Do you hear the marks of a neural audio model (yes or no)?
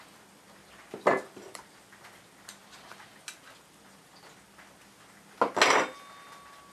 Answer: no